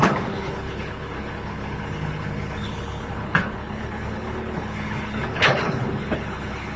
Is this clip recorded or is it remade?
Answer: remade